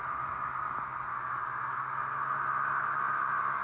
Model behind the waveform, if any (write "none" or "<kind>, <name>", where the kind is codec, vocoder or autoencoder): none